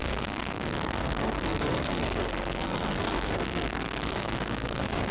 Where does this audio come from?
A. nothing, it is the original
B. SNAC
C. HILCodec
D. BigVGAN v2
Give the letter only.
B